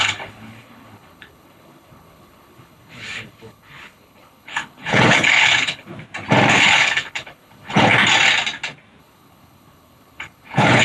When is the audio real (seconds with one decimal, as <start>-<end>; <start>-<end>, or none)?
5.9-6.5; 7.9-9.0